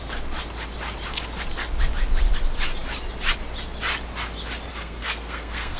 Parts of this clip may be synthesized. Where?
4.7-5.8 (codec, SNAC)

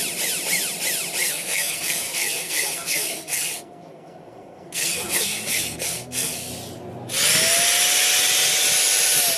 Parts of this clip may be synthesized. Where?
1.2-6.5 (codec, SNAC)

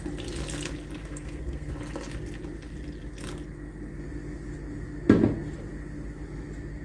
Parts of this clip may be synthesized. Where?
1.0-1.7 (codec, SNAC)

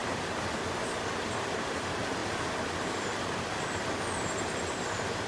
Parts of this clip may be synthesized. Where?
none

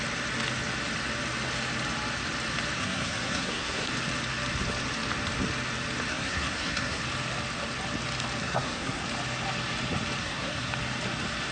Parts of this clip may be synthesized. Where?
2.8-3.9 (codec, SNAC); 6.1-7.0; 8.4-9.0; 10.2-10.7

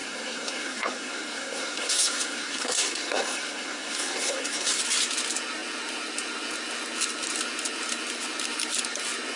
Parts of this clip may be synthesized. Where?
0.0-4.8 (codec, SNAC)